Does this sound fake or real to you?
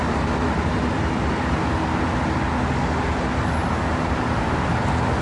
real